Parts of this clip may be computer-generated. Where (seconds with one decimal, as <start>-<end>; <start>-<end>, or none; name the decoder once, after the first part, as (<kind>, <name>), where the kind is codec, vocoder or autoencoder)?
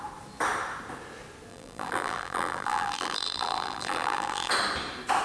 1.5-4.5 (vocoder, BigVGAN v2)